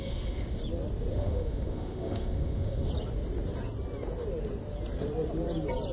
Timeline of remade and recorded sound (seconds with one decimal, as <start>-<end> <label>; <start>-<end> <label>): 0.0-0.6 remade; 0.6-1.1 recorded; 1.1-2.9 remade; 2.9-5.9 recorded